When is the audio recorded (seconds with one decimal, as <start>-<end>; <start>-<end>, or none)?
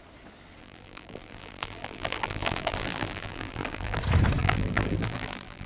0.0-0.6; 4.0-4.4